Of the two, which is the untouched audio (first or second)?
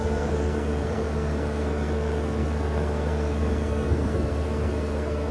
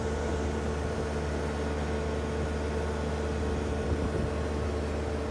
second